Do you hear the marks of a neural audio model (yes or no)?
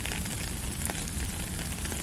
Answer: yes